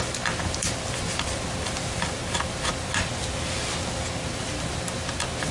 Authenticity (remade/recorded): recorded